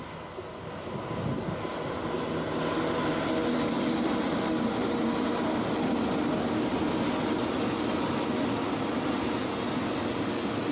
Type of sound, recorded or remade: recorded